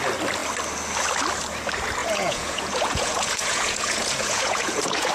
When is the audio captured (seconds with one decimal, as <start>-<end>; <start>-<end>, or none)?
0.0-2.0